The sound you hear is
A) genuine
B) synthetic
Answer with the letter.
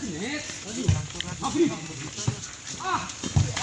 A